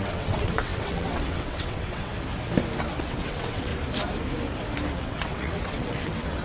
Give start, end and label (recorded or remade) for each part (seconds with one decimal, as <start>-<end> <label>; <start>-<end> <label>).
0.0-2.1 remade; 2.1-3.0 recorded; 3.0-3.7 remade; 3.7-5.0 recorded; 5.0-6.4 remade